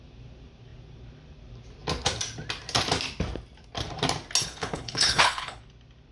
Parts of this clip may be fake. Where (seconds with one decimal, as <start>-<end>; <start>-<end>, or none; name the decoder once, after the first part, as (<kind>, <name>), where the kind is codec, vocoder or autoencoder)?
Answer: 4.4-5.6 (codec, HILCodec)